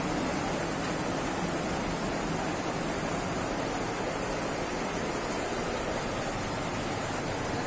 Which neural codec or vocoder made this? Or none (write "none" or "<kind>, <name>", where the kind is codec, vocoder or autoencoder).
none